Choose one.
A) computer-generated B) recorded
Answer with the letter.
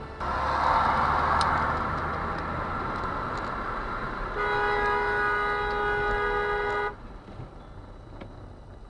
B